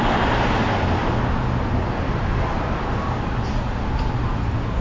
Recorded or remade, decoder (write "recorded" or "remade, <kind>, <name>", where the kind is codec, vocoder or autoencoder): recorded